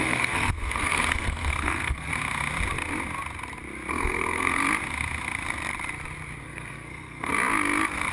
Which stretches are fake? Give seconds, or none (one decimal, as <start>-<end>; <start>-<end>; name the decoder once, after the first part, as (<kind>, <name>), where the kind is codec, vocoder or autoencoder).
0.0-2.1 (codec, SNAC); 3.9-4.6; 6.4-7.3